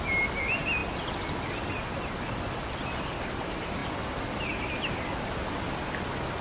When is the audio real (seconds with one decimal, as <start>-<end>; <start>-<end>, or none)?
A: 0.0-6.4